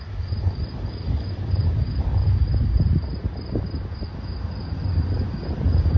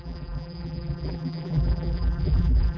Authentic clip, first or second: first